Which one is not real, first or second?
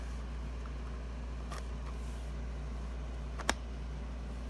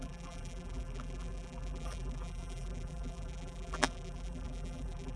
second